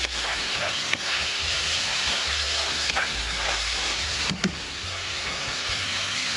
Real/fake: fake